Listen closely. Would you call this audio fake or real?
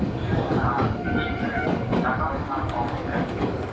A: fake